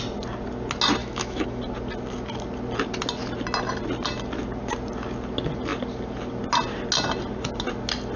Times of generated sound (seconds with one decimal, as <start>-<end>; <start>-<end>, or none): 1.0-1.6